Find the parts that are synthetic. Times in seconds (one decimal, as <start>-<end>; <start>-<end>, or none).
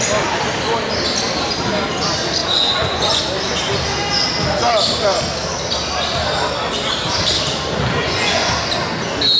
2.4-3.2; 8.0-8.5